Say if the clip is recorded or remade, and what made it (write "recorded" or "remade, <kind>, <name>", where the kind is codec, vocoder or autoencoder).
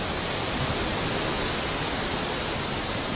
recorded